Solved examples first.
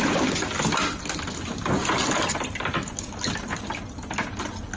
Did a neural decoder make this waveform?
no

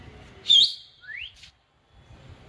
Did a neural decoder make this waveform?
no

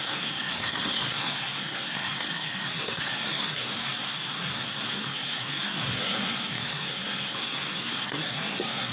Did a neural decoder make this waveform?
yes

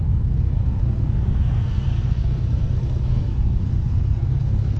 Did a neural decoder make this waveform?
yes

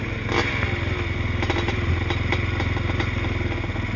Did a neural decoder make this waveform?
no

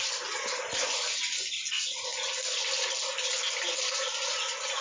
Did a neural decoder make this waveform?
no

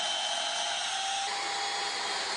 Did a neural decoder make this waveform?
no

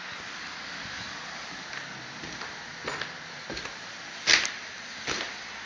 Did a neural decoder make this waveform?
no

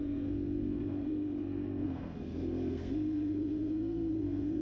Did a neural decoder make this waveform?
yes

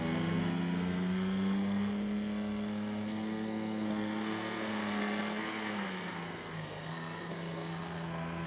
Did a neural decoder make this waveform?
yes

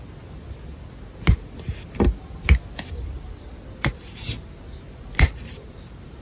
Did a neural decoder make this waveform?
no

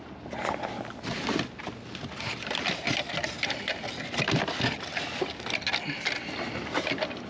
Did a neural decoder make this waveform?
no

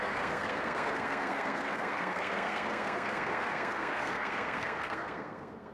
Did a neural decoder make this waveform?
yes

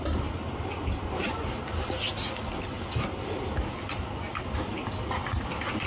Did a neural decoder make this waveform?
no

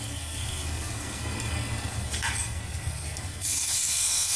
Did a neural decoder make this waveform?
yes